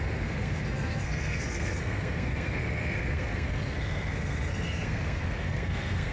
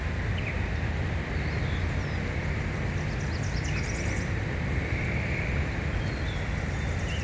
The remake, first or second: first